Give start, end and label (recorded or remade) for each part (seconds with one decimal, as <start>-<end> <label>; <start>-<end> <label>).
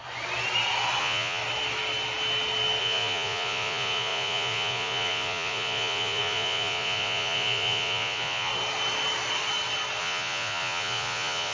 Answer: 0.0-1.0 recorded; 1.0-1.4 remade; 1.4-2.8 recorded; 2.8-8.5 remade; 8.5-10.0 recorded; 10.0-11.5 remade